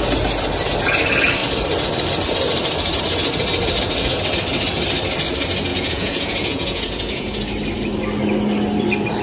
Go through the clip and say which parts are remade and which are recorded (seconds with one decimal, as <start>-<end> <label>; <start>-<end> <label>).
0.0-5.7 recorded; 5.7-7.4 remade; 7.4-9.2 recorded